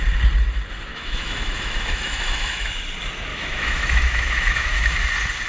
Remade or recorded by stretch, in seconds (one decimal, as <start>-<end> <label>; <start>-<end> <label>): 0.0-0.9 recorded; 0.9-2.7 remade; 2.7-3.3 recorded; 3.3-4.8 remade; 4.8-5.5 recorded